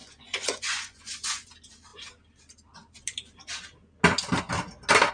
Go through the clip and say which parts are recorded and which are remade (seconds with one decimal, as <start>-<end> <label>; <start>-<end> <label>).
0.0-1.5 remade; 1.5-5.1 recorded